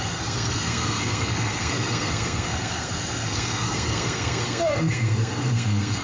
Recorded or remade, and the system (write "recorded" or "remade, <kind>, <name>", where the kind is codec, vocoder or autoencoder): remade, codec, SNAC